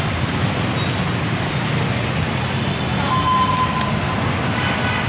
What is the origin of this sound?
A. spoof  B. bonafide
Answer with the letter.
B